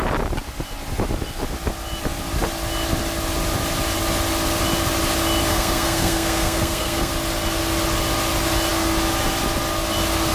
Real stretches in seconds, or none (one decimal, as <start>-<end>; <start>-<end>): 0.0-5.5; 7.1-10.3